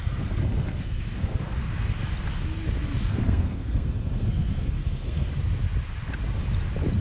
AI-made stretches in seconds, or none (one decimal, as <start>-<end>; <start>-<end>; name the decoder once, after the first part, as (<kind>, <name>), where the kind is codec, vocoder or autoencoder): 0.0-1.6 (codec, SNAC); 3.1-5.3